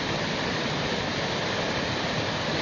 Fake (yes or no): no